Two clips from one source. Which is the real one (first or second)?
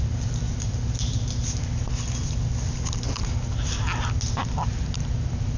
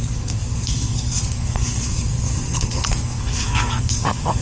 first